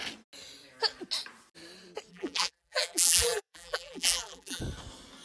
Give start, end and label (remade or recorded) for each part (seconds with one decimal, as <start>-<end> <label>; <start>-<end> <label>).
0.0-2.1 recorded; 2.1-4.6 remade; 4.6-5.2 recorded